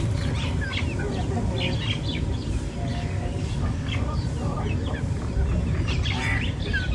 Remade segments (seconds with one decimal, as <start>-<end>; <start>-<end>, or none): 2.9-4.2